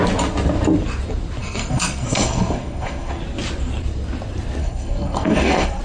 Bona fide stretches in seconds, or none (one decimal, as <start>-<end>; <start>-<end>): 0.0-1.4; 3.2-4.6